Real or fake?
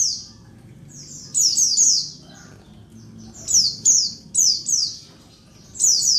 real